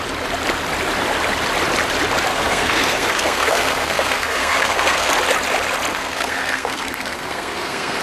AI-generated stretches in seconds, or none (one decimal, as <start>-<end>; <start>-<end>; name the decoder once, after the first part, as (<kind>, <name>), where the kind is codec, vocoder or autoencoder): 2.3-5.1 (codec, SNAC); 5.9-8.0